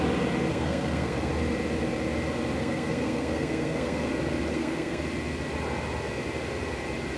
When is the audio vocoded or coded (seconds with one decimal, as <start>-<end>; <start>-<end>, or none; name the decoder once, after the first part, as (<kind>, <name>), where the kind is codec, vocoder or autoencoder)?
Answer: 0.5-1.3 (codec, SNAC); 2.6-4.1; 4.5-5.0